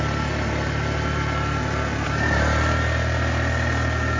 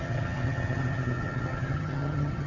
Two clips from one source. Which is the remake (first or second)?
second